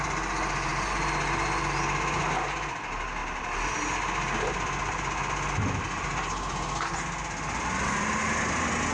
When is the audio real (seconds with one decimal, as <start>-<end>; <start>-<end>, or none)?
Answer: 0.0-8.9